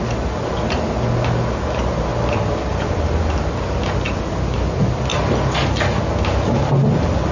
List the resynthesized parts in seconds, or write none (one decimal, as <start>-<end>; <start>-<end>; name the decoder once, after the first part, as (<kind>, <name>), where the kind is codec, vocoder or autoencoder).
none